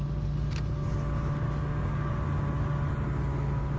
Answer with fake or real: real